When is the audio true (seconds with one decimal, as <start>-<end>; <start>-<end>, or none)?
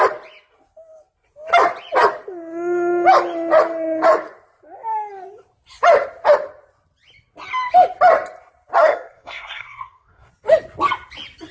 0.0-8.8; 10.3-11.5